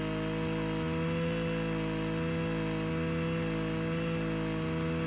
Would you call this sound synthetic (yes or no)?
no